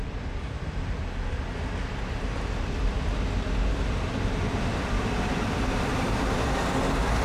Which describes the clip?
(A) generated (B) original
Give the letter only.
A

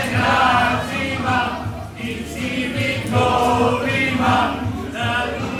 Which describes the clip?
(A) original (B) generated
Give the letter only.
A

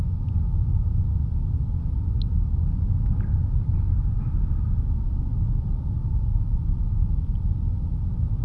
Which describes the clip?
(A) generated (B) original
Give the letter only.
B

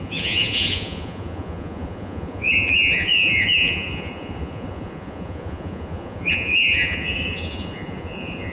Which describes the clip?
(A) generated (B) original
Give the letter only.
A